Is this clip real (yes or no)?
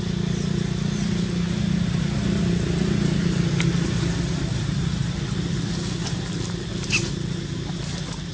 yes